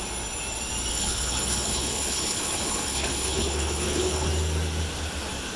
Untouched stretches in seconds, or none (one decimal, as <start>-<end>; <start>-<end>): 0.0-0.9; 4.3-5.6